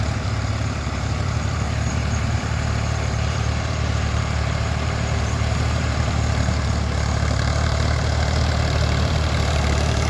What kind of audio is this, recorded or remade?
remade